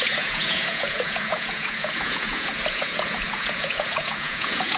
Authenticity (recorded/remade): remade